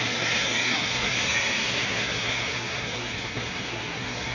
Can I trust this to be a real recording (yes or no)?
no